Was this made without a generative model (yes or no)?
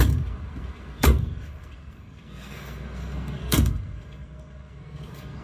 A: no